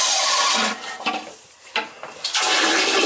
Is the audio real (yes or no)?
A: no